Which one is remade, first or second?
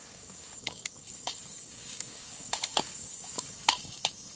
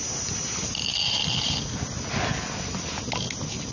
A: first